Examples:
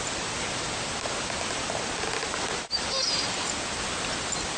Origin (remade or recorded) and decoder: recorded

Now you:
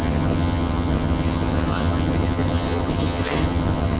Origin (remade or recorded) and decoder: remade, vocoder, HiFi-GAN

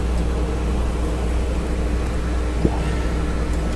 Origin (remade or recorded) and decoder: recorded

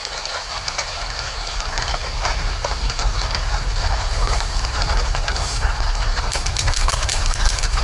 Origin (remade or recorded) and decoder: remade, codec, SNAC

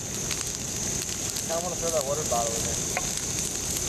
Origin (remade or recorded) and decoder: recorded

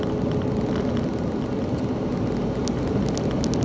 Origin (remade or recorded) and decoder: recorded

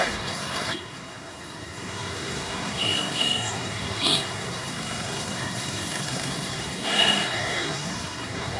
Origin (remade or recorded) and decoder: remade, codec, SNAC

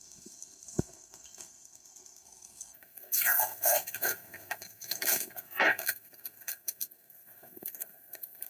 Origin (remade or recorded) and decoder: remade, codec, SNAC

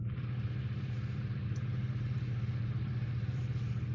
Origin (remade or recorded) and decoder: remade, vocoder, BigVGAN v2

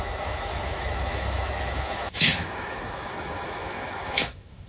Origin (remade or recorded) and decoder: remade, autoencoder, DAC-VAE